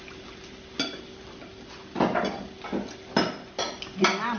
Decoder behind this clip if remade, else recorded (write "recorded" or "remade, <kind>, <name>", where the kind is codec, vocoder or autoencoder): recorded